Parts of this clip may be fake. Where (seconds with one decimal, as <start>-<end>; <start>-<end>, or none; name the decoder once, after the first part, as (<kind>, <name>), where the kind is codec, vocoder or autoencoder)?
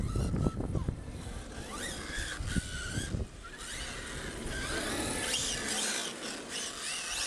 none